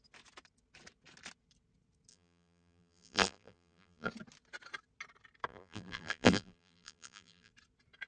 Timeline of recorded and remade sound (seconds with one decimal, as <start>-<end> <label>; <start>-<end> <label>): 0.0-2.1 recorded; 2.1-4.1 remade; 4.1-5.5 recorded; 5.5-7.5 remade; 7.5-8.1 recorded